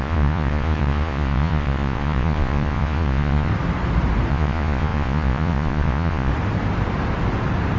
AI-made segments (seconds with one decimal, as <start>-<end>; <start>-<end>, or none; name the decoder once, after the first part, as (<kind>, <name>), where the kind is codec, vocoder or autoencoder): 0.0-3.5 (vocoder, Vocos); 4.3-6.3